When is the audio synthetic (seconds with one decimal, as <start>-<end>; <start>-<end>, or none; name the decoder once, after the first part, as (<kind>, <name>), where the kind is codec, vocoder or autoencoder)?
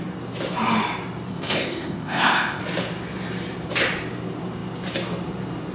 1.3-2.6 (codec, ZipCodec)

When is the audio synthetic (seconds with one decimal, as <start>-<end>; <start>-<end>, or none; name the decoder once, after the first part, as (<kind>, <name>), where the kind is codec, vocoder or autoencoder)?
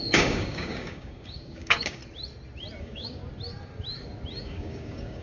0.0-2.0 (codec, DAC); 2.8-3.2; 4.4-5.2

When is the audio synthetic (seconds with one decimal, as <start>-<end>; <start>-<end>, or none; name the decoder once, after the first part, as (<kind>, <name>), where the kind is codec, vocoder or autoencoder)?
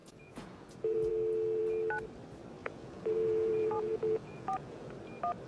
0.0-1.1 (vocoder, Vocos); 2.6-4.9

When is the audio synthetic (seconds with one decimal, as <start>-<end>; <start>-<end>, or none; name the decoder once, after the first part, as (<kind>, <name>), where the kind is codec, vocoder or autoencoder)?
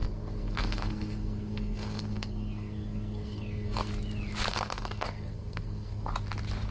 0.0-3.9 (codec, SNAC); 4.5-6.1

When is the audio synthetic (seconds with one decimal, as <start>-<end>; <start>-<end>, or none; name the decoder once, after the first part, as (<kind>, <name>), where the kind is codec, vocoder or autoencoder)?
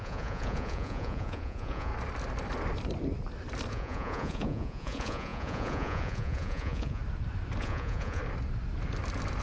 0.0-1.9 (vocoder, Vocos); 3.7-7.0; 7.6-8.2